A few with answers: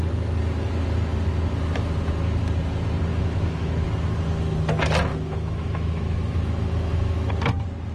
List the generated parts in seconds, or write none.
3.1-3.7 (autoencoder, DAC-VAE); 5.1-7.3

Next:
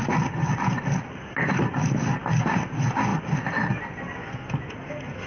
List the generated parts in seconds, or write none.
4.2-5.3 (autoencoder, DAC-VAE)

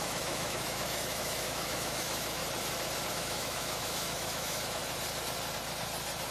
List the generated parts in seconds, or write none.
0.0-2.4 (autoencoder, DAC-VAE); 3.1-4.8